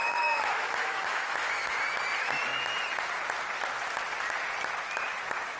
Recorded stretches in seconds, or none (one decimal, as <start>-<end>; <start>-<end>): 1.7-5.6